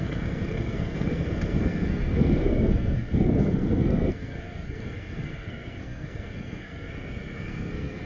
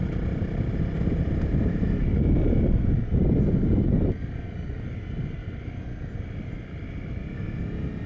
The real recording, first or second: second